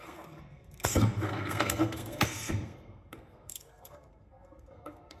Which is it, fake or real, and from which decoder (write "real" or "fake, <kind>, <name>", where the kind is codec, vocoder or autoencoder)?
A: fake, codec, SNAC